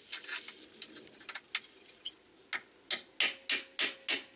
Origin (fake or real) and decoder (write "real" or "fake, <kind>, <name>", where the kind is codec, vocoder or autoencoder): real